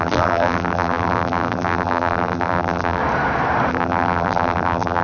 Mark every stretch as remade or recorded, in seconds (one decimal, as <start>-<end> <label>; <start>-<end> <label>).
0.0-3.0 remade; 3.0-3.7 recorded; 3.7-5.0 remade